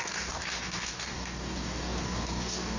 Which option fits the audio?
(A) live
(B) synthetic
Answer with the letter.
B